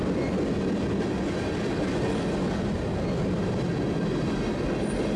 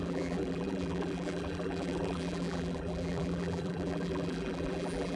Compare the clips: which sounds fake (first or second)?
second